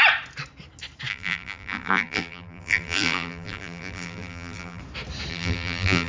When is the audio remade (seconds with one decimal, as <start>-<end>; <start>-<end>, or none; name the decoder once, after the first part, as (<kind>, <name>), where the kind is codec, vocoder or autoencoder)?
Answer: 1.1-4.8 (vocoder, BigVGAN v2); 5.3-6.1